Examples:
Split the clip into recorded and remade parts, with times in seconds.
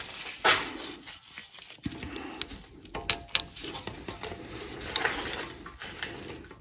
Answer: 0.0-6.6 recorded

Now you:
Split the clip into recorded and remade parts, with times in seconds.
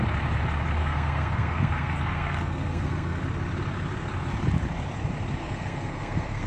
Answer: 0.0-0.8 recorded; 0.8-3.2 remade; 3.2-5.4 recorded; 5.4-6.5 remade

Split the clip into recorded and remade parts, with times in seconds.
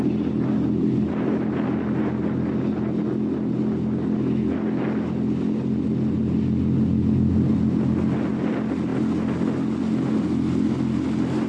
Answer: 0.0-11.5 recorded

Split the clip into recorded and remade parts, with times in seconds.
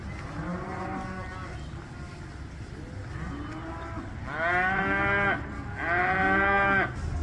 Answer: 0.0-7.2 recorded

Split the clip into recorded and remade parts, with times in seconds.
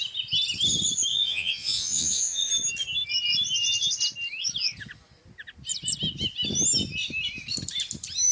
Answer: 0.0-1.1 recorded; 1.1-2.5 remade; 2.5-8.3 recorded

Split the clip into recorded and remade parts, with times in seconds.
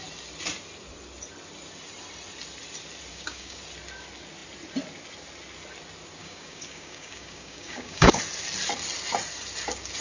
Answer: 0.0-3.1 recorded; 3.1-3.6 remade; 3.6-6.2 recorded; 6.2-8.2 remade; 8.2-10.0 recorded